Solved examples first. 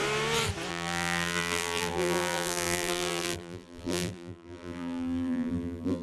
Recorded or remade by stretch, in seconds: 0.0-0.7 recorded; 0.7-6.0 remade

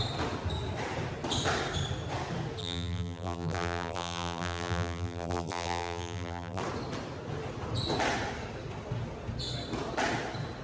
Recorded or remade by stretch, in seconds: 0.0-2.6 recorded; 2.6-6.6 remade; 6.6-10.6 recorded

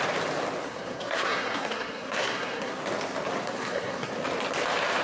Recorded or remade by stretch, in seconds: 0.0-0.6 recorded; 0.6-2.8 remade; 2.8-3.4 recorded; 3.4-4.1 remade; 4.1-5.0 recorded

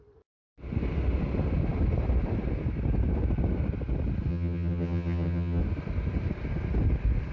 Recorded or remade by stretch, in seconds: 0.0-4.3 recorded; 4.3-5.6 remade; 5.6-7.3 recorded

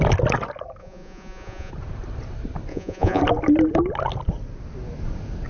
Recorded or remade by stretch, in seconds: 0.0-0.8 recorded; 0.8-1.7 remade; 1.7-2.7 recorded; 2.7-3.2 remade; 3.2-5.5 recorded

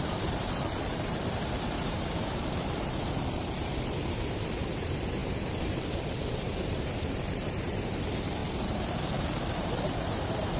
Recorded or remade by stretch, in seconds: 0.0-10.6 remade

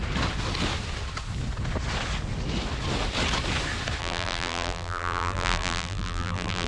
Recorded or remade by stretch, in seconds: 0.0-4.0 recorded; 4.0-6.7 remade